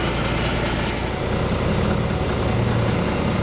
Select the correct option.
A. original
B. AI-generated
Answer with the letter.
A